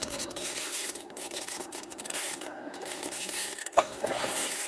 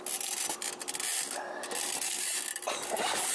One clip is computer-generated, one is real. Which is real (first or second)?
second